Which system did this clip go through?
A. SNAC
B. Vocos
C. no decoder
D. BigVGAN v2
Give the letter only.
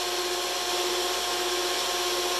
C